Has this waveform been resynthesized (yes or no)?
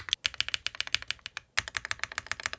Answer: no